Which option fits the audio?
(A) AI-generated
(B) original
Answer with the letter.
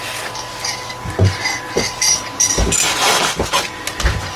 B